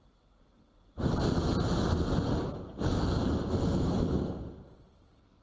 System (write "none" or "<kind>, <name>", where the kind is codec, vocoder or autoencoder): none